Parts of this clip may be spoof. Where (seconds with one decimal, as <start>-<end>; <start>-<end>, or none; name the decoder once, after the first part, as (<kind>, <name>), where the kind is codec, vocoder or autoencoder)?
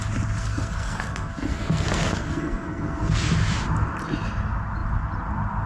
0.4-3.3 (codec, SNAC)